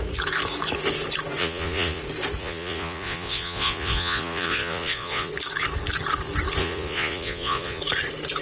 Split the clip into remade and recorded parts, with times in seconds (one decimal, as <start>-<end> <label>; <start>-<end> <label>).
0.0-1.4 recorded; 1.4-2.0 remade; 2.0-2.4 recorded; 2.4-5.3 remade; 5.3-6.6 recorded; 6.6-7.8 remade; 7.8-8.4 recorded